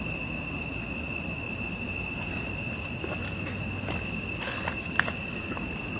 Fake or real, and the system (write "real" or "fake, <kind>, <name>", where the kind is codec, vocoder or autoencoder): real